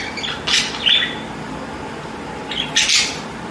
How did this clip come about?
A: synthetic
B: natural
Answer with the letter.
B